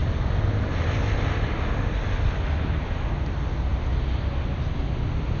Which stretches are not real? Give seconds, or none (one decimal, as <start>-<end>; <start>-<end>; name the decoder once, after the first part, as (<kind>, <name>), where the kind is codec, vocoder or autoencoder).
none